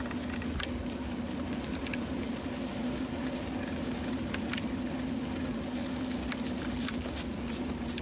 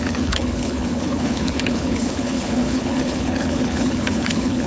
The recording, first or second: first